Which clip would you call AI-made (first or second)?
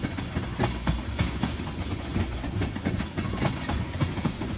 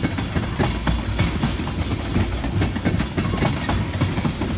first